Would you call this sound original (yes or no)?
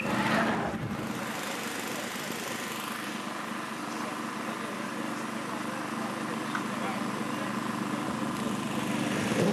yes